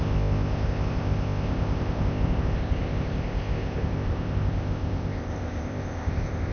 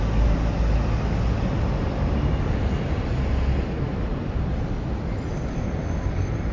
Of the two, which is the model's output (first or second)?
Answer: first